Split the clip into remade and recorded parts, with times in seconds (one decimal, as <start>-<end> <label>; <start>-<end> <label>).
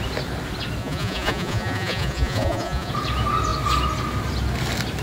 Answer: 0.0-0.8 recorded; 0.8-2.9 remade; 2.9-5.0 recorded